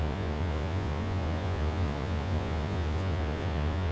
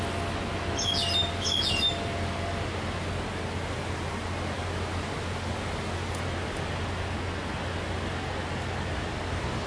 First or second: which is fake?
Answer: first